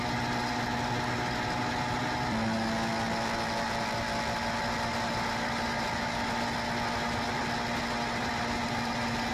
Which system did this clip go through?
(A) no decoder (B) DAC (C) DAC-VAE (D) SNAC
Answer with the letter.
A